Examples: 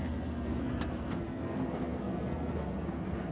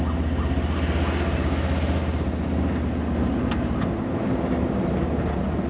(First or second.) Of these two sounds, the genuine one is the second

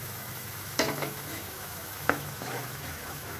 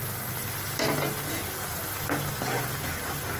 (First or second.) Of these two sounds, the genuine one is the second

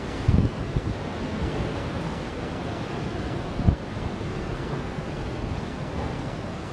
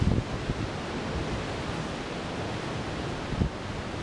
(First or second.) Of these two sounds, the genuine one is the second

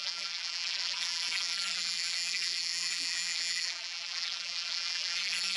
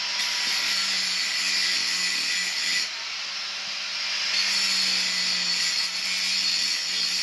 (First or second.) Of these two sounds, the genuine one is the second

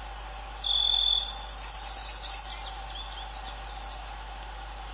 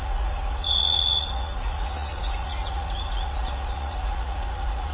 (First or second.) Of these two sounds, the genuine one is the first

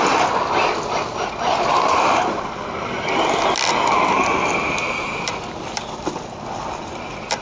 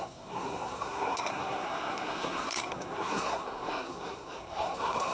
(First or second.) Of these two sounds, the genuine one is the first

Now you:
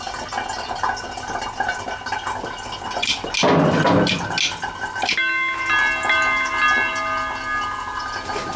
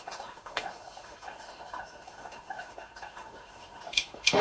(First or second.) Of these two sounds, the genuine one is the first